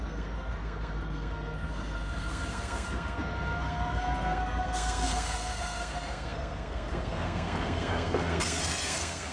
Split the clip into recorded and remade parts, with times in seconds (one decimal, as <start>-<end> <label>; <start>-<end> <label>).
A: 0.0-9.3 remade